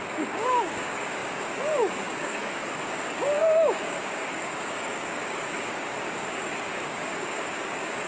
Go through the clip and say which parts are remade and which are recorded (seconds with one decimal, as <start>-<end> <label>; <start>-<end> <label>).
0.0-8.1 remade